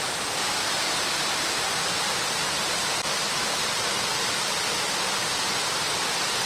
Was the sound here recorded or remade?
recorded